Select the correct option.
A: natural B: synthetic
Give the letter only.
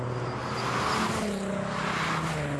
A